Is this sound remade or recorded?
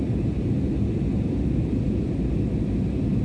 recorded